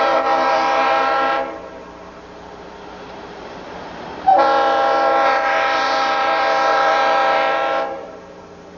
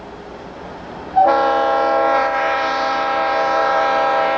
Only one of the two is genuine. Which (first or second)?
second